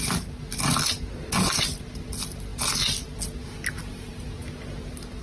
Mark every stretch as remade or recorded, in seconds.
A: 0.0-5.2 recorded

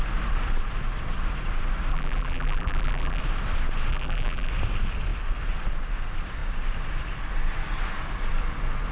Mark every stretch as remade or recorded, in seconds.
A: 0.0-1.9 recorded; 1.9-3.2 remade; 3.2-3.9 recorded; 3.9-4.5 remade; 4.5-8.9 recorded

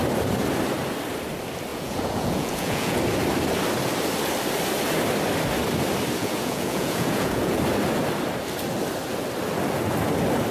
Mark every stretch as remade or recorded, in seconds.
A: 0.0-1.7 recorded; 1.7-3.0 remade; 3.0-6.2 recorded; 6.2-7.6 remade; 7.6-10.5 recorded

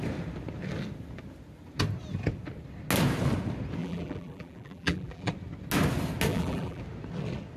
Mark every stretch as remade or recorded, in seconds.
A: 0.0-3.8 recorded; 3.8-5.3 remade; 5.3-6.3 recorded; 6.3-6.8 remade; 6.8-7.6 recorded